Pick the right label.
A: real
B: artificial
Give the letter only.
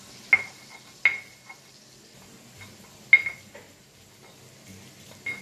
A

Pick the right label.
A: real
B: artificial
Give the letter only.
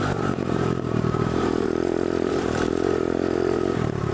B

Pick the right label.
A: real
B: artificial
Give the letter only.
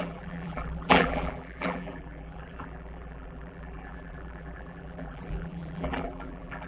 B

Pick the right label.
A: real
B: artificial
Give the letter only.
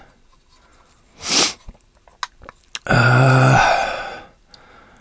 A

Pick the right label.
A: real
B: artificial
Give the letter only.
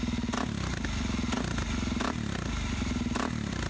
A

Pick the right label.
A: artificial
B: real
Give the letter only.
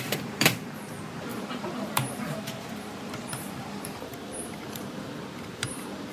A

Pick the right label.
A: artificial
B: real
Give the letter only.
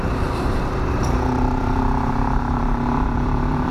A